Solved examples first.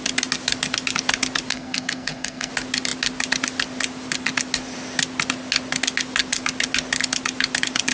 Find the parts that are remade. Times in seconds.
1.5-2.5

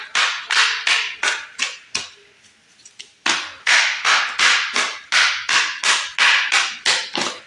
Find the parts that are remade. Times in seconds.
3.6-4.2

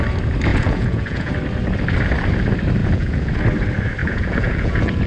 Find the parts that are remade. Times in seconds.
0.5-1.3; 2.8-3.3; 4.0-5.1